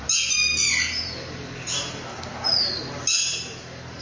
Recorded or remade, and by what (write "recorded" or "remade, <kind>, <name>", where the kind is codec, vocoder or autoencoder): recorded